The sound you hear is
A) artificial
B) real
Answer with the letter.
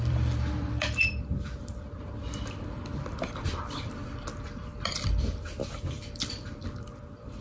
A